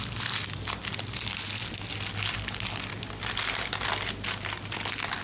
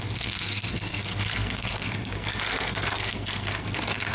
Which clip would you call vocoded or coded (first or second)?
second